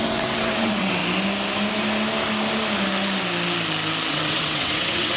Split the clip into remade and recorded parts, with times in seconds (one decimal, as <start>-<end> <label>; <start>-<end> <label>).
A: 0.0-1.0 remade; 1.0-4.1 recorded; 4.1-5.2 remade